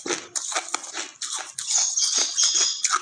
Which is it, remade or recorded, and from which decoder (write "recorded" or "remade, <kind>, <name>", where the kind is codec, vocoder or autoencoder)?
recorded